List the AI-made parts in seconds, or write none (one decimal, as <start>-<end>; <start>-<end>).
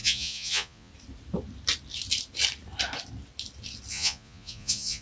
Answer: 0.0-0.9; 3.9-5.0